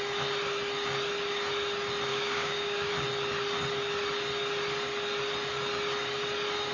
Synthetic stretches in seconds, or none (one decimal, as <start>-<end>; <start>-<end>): 2.1-2.9